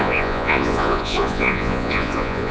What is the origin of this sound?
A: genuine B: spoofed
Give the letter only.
B